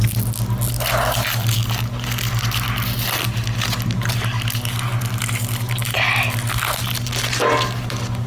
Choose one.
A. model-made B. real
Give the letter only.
B